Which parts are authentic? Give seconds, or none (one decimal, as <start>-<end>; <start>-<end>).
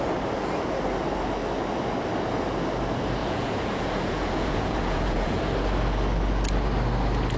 0.0-3.2; 5.4-7.4